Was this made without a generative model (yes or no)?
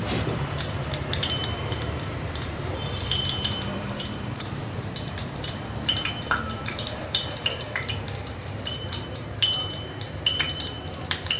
no